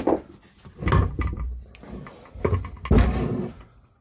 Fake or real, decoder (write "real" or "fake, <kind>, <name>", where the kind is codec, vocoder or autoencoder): real